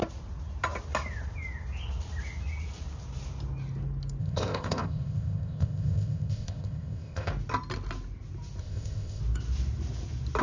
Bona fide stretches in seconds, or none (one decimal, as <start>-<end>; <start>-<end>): 0.0-4.2; 7.3-8.6; 9.2-10.4